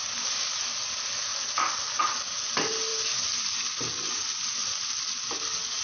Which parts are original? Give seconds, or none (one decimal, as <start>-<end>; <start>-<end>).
0.0-5.8